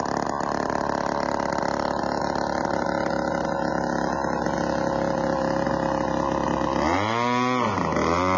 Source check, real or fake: real